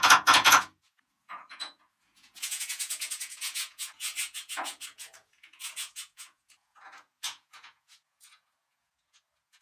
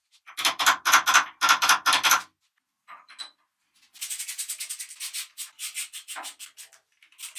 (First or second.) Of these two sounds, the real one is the second